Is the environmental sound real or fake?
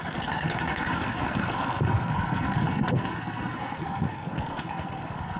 fake